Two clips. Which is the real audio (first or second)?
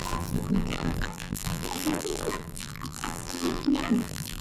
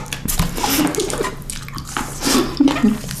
second